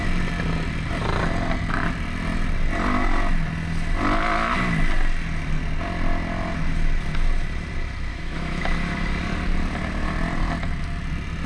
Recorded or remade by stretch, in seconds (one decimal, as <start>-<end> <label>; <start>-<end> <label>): 0.0-8.1 recorded; 8.1-8.6 remade; 8.6-11.5 recorded